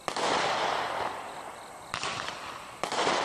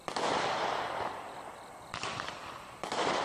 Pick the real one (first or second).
first